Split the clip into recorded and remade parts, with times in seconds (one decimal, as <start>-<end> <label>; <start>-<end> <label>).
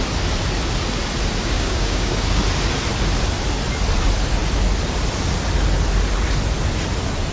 0.0-1.4 recorded; 1.4-2.4 remade; 2.4-7.3 recorded